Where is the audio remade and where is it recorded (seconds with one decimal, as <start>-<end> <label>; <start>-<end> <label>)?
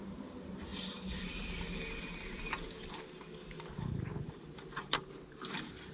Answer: 0.0-0.7 remade; 0.7-4.2 recorded; 4.2-5.9 remade